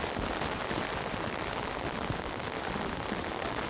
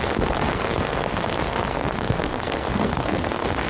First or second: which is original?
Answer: first